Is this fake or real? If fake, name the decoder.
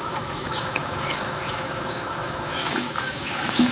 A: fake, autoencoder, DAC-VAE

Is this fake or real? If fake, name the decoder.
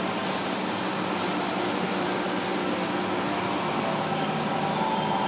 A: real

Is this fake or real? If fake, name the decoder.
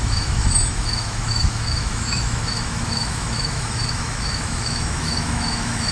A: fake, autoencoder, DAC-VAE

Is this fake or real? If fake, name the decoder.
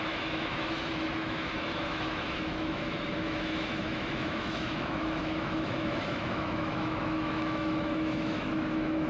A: fake, autoencoder, DAC-VAE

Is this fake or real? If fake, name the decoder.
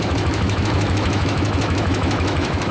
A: fake, autoencoder, DAC-VAE